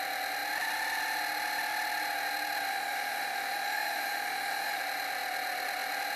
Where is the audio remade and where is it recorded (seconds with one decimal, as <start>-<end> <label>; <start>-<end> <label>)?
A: 0.0-2.7 recorded; 2.7-4.8 remade; 4.8-6.2 recorded